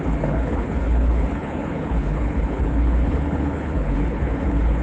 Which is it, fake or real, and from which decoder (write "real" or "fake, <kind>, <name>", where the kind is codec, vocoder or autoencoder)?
fake, codec, HILCodec